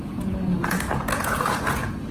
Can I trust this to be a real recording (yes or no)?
no